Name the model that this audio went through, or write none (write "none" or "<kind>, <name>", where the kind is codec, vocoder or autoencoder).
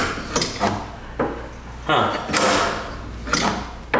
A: none